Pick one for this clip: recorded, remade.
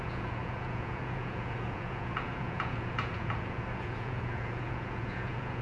remade